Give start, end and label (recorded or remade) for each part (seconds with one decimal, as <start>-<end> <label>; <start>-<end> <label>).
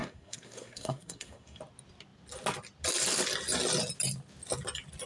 0.0-1.6 remade; 1.6-5.1 recorded